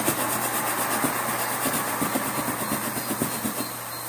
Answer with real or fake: real